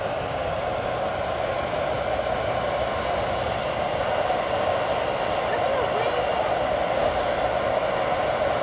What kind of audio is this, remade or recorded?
recorded